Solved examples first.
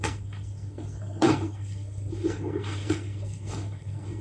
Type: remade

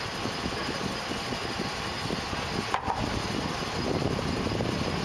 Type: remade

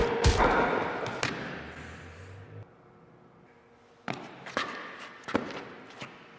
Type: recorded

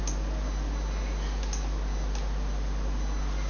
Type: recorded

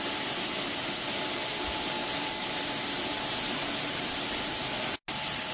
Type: recorded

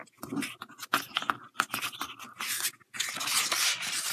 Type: recorded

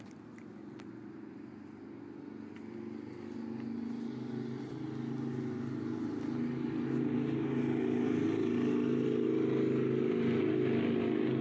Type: recorded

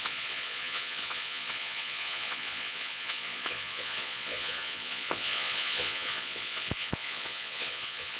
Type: remade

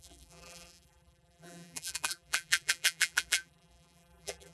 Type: remade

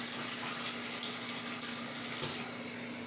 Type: recorded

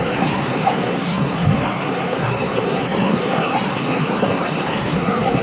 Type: remade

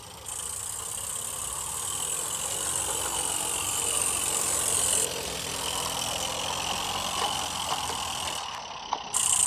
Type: recorded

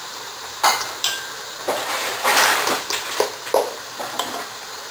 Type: remade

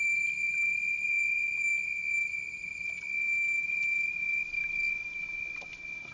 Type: recorded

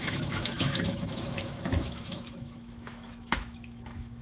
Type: remade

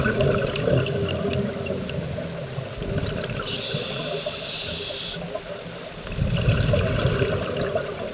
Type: recorded